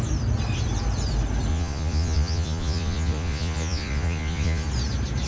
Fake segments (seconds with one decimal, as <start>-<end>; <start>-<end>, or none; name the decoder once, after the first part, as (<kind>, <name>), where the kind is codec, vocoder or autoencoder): 1.5-4.7 (vocoder, Vocos)